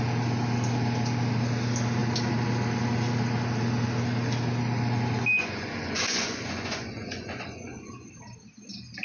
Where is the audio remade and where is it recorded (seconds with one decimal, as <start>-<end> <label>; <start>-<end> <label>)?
0.0-5.4 recorded; 5.4-8.1 remade; 8.1-9.0 recorded